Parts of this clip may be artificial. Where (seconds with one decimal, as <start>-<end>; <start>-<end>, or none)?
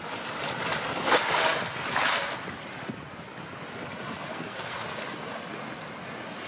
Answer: 4.3-5.0